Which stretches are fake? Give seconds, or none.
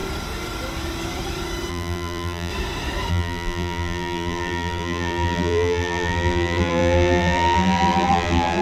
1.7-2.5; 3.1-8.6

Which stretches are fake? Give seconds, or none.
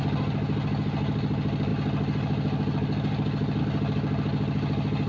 none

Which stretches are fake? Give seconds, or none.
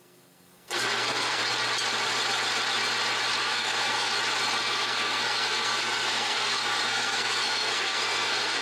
0.0-1.4; 3.4-4.1; 4.6-8.6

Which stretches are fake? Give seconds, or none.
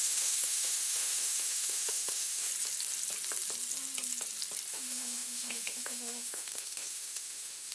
0.0-2.5; 4.7-7.7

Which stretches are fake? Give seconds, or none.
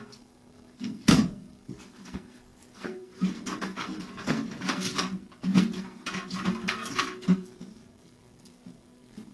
0.0-9.3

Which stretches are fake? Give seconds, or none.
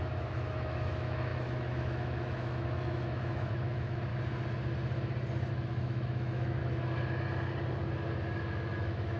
0.0-4.1; 5.5-6.6; 8.4-9.2